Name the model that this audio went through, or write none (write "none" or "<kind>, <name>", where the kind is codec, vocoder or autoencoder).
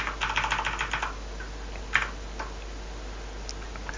none